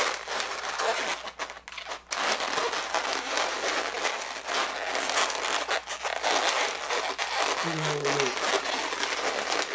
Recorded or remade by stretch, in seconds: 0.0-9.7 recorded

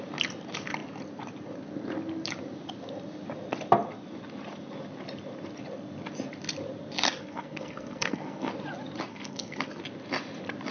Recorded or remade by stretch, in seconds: 0.0-7.2 recorded; 7.2-8.5 remade; 8.5-9.1 recorded; 9.1-9.8 remade; 9.8-10.7 recorded

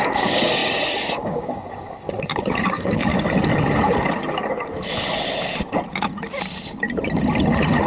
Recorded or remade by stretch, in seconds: 0.0-3.1 remade; 3.1-7.9 recorded

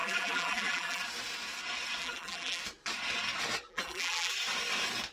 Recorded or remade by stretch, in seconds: 0.0-1.0 remade; 1.0-2.0 recorded; 2.0-2.6 remade; 2.6-3.7 recorded; 3.7-4.3 remade; 4.3-5.1 recorded

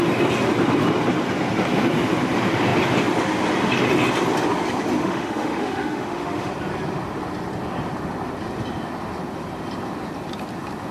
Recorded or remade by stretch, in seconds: 0.0-5.0 recorded; 5.0-6.5 remade; 6.5-10.9 recorded